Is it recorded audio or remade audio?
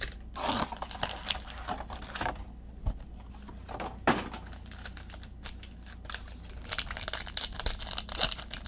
recorded